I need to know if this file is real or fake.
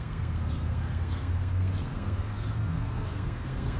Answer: fake